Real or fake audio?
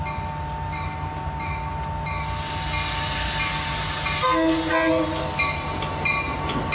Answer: real